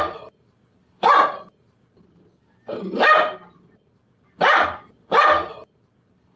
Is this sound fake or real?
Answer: fake